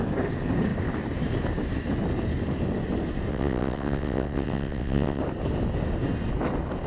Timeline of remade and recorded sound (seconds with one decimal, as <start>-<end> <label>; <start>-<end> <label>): 0.0-3.3 recorded; 3.3-5.2 remade; 5.2-6.9 recorded